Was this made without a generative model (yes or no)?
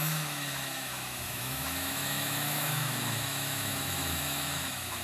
no